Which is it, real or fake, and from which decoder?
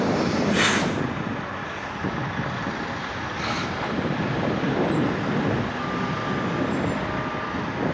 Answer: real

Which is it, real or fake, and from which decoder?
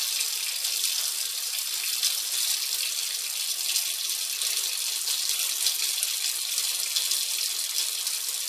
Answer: real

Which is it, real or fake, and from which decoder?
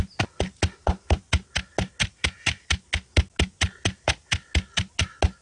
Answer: real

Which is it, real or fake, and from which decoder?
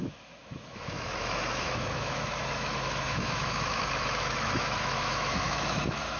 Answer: fake, autoencoder, DAC-VAE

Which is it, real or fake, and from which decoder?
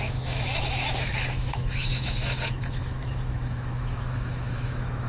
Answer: fake, autoencoder, DAC-VAE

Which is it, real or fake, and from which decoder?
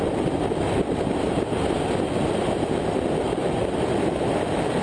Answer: real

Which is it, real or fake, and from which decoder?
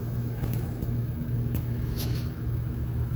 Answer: fake, autoencoder, DAC-VAE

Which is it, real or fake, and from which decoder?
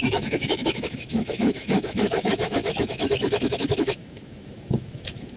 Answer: fake, autoencoder, DAC-VAE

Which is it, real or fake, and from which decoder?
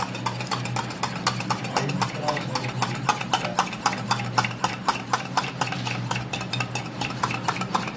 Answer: real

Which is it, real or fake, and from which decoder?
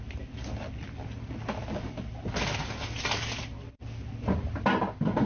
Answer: real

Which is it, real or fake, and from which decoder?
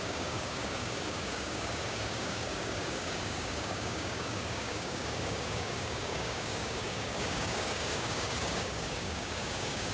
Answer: fake, codec, DAC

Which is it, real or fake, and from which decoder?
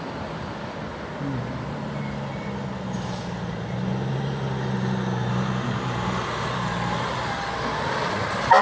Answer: real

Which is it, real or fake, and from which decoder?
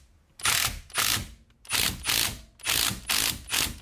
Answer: real